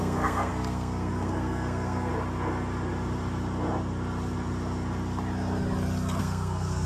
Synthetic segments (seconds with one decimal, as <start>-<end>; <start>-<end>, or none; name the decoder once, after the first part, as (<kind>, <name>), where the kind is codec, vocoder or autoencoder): 0.0-2.1 (codec, SNAC); 6.2-6.9